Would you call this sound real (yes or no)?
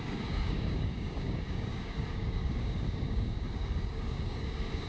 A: no